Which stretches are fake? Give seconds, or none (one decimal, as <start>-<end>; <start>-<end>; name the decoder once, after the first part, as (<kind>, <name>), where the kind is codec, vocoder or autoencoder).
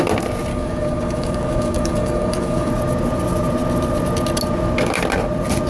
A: 0.5-2.7 (codec, DAC)